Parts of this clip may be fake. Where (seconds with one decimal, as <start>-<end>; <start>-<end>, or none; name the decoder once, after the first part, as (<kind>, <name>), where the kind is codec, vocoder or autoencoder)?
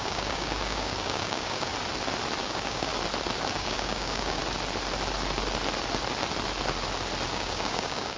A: 0.0-1.7 (codec, DAC); 2.4-2.9; 3.5-4.4; 7.3-8.2